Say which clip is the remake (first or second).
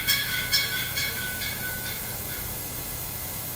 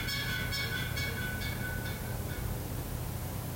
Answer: first